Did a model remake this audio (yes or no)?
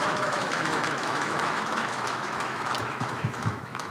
yes